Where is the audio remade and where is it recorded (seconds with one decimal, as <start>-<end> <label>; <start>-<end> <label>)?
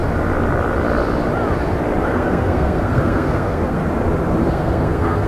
0.0-2.0 recorded; 2.0-3.8 remade; 3.8-4.5 recorded; 4.5-5.3 remade